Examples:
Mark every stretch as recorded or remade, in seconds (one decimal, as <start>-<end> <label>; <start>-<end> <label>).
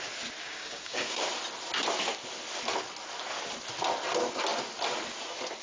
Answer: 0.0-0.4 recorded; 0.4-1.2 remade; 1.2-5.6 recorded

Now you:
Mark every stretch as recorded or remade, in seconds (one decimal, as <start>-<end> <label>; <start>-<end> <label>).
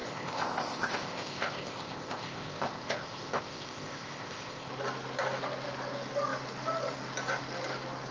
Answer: 0.0-4.7 remade; 4.7-8.1 recorded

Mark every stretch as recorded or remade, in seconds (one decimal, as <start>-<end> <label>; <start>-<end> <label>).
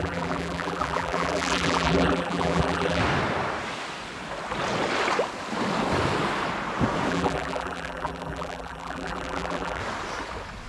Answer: 0.0-3.0 remade; 3.0-7.1 recorded; 7.1-9.8 remade; 9.8-10.7 recorded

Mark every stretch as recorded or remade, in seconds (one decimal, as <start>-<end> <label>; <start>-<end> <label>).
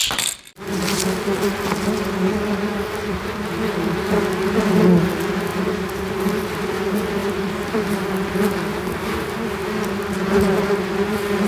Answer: 0.0-2.3 remade; 2.3-5.5 recorded; 5.5-6.1 remade; 6.1-7.2 recorded; 7.2-7.7 remade; 7.7-11.5 recorded